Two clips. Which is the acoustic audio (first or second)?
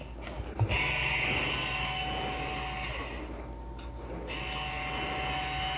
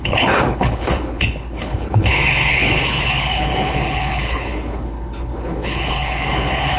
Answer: first